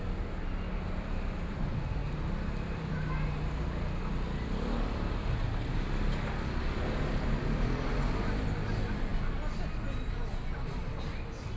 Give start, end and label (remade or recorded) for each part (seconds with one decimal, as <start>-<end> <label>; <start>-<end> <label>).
0.0-11.6 recorded